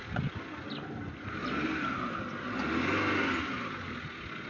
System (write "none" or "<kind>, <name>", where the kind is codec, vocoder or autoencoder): none